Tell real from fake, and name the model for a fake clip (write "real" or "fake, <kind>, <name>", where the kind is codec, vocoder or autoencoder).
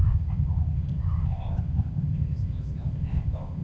fake, codec, ZipCodec